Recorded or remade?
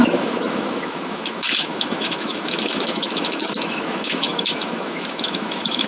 remade